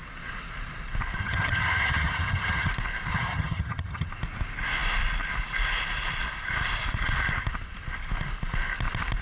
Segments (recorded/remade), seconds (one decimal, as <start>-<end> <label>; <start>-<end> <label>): 0.0-1.2 recorded; 1.2-2.7 remade; 2.7-3.1 recorded; 3.1-4.1 remade; 4.1-9.2 recorded